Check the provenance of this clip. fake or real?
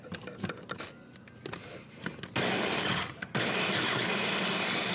real